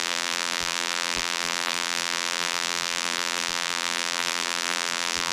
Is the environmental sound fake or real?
fake